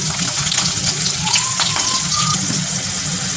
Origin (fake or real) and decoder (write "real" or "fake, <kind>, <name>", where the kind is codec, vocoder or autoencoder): fake, vocoder, WaveNeXt